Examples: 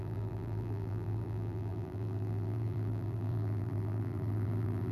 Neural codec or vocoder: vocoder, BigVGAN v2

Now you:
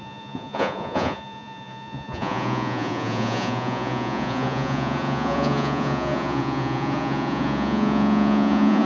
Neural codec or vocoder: vocoder, Vocos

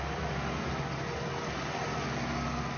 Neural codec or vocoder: none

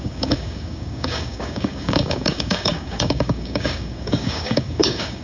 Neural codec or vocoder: codec, DAC